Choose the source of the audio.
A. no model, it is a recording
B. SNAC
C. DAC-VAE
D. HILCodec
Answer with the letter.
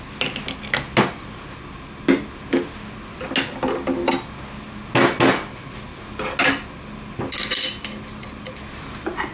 A